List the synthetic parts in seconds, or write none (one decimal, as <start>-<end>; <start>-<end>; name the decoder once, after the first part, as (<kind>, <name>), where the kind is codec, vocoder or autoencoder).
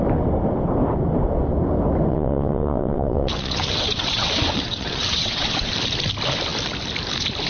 2.1-5.7 (vocoder, WaveNeXt)